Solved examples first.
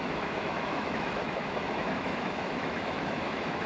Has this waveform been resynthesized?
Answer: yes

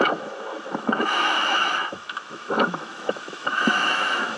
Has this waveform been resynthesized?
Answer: yes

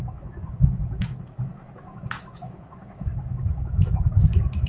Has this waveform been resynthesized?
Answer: yes